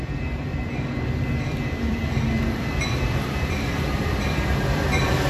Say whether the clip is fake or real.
fake